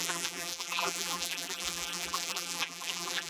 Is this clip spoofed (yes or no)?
yes